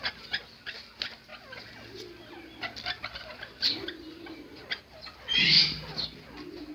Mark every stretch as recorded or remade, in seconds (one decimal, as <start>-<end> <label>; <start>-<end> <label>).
0.0-6.7 recorded